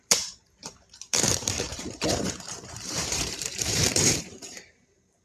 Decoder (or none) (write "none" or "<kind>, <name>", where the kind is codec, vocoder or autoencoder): vocoder, BigVGAN v2